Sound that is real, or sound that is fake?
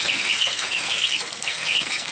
fake